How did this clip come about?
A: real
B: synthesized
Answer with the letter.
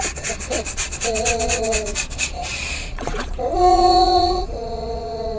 B